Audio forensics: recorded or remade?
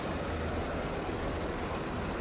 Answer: recorded